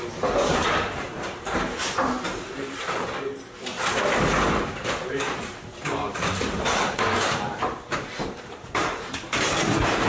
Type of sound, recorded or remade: remade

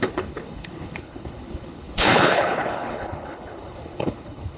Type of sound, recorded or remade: remade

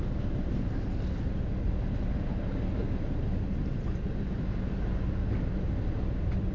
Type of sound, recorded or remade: recorded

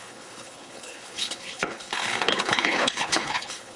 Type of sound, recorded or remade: remade